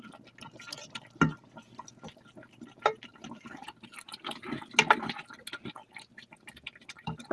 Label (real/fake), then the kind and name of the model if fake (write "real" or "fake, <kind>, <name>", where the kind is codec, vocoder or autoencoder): real